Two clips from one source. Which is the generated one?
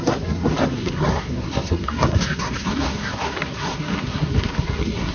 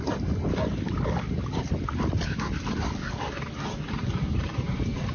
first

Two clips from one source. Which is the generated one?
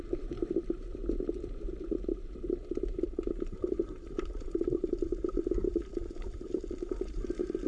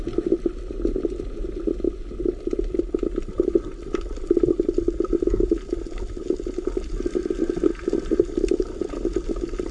first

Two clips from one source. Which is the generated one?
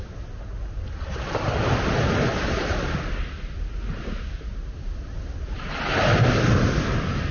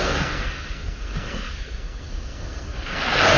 second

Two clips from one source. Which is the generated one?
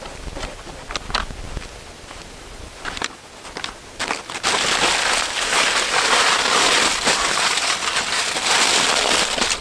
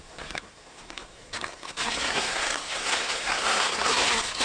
second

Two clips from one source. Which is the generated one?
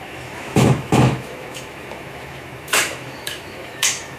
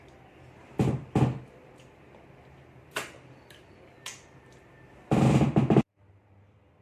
first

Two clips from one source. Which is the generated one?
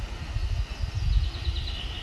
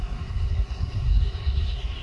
second